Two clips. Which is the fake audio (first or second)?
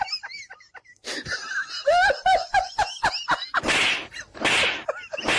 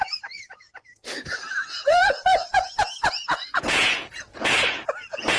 second